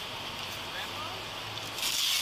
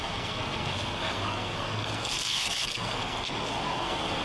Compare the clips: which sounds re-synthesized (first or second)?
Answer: second